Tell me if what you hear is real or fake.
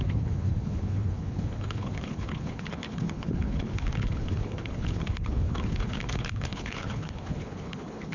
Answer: fake